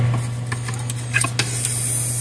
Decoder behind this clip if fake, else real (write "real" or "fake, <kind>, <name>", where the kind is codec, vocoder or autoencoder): real